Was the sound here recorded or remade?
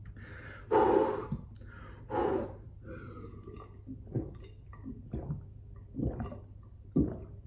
recorded